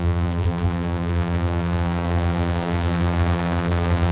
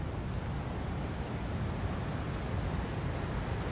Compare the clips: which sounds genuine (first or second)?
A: second